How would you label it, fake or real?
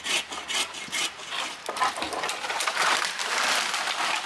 real